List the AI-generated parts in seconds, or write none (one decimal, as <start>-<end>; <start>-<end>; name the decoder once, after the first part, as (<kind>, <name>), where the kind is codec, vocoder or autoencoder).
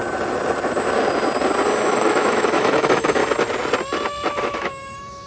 1.8-3.2 (autoencoder, DAC-VAE); 4.4-5.3